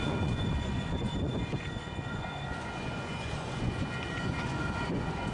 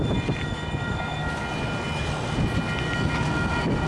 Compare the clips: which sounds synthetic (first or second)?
first